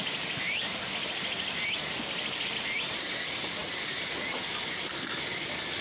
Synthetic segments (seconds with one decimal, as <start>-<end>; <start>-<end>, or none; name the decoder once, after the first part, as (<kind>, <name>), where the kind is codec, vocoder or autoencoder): none